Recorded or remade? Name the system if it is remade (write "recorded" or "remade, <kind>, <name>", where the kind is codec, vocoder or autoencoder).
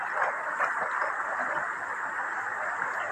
recorded